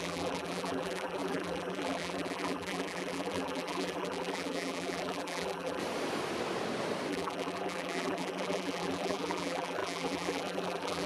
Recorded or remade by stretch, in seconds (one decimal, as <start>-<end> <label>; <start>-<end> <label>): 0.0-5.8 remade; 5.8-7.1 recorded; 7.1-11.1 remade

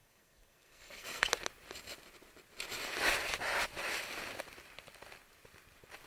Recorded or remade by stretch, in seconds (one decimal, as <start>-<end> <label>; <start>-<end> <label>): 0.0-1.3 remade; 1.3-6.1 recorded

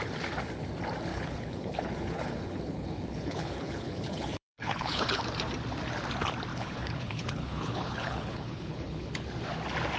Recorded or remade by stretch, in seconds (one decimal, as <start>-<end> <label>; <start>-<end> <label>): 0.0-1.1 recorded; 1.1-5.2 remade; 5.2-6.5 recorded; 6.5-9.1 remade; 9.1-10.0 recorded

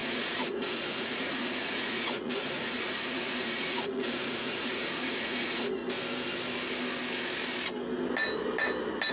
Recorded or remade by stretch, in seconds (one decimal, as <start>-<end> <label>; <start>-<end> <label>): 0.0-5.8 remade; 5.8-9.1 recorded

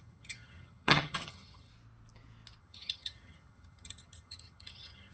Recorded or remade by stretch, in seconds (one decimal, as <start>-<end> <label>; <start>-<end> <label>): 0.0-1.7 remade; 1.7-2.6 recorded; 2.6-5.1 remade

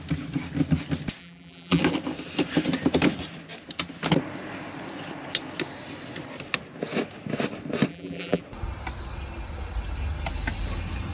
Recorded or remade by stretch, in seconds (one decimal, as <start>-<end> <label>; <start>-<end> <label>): 0.0-1.2 recorded; 1.2-1.8 remade; 1.8-7.9 recorded; 7.9-8.4 remade; 8.4-11.1 recorded